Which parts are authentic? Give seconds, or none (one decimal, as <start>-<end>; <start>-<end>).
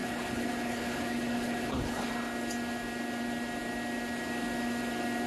2.1-5.3